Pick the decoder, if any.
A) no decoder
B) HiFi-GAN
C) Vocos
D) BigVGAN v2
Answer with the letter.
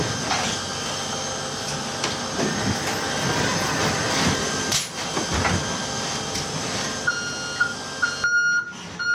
A